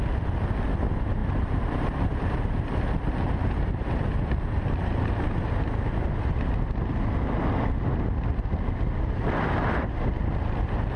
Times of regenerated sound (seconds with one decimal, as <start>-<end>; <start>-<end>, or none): 1.2-5.6